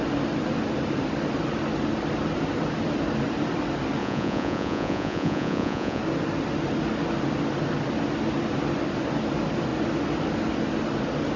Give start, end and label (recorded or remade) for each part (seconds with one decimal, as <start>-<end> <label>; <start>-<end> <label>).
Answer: 0.0-4.0 recorded; 4.0-6.0 remade; 6.0-11.4 recorded